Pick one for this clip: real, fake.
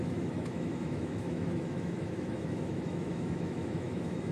fake